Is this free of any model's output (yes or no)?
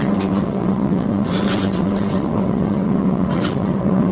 no